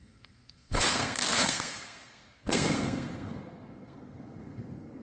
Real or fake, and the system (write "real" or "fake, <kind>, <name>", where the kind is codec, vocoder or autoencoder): fake, codec, SNAC